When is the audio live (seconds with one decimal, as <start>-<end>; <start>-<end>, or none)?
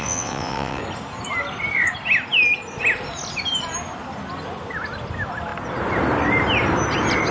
0.8-7.3